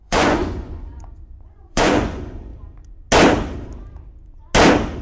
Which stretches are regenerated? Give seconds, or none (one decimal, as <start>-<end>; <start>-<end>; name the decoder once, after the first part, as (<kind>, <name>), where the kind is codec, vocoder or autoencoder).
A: 0.0-2.5 (vocoder, Vocos)